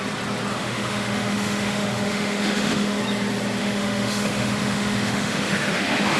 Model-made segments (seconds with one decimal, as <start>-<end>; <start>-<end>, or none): 0.5-3.0; 3.6-6.2